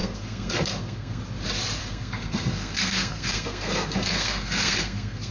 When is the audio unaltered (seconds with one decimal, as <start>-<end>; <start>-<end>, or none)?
1.2-1.8